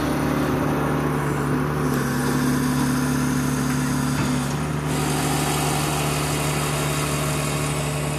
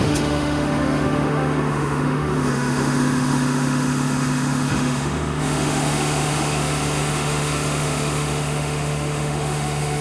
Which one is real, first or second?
first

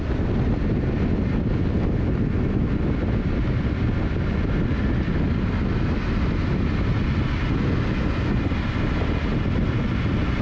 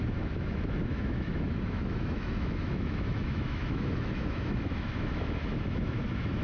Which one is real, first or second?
first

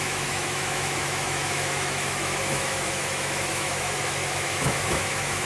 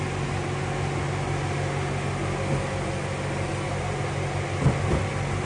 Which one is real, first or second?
second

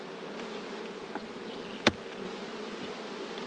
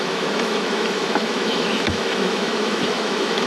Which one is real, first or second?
first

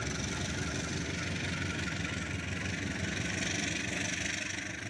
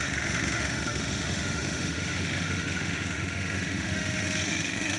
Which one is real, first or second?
first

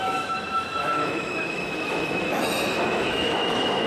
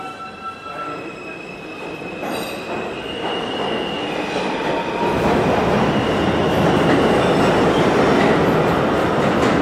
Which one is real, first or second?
second